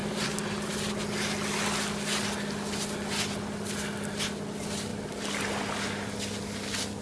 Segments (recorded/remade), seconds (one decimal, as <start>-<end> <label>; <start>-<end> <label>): 0.0-7.0 recorded